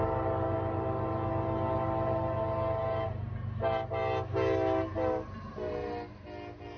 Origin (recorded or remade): recorded